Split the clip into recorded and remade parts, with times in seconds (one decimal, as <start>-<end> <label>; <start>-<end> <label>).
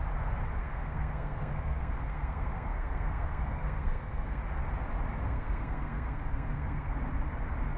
0.0-0.6 recorded; 0.6-4.4 remade; 4.4-5.2 recorded; 5.2-7.0 remade; 7.0-7.8 recorded